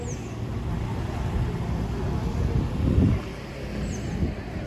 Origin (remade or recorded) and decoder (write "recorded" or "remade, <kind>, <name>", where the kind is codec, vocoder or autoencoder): recorded